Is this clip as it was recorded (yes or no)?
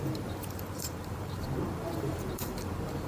no